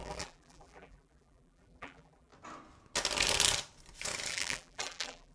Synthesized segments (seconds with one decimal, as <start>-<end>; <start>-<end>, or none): 0.0-2.3; 4.3-5.3